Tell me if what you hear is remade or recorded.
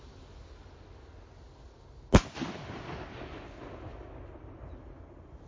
recorded